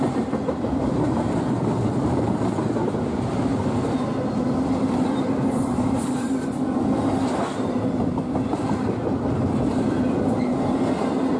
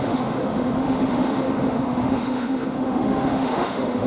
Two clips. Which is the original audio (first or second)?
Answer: first